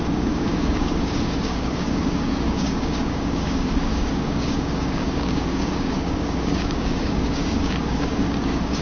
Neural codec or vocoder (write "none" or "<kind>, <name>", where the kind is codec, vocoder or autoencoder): codec, DAC